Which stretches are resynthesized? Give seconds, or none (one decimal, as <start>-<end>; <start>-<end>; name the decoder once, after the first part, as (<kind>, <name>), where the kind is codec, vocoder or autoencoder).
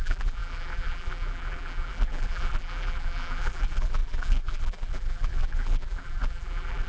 0.0-6.9 (vocoder, BigVGAN v2)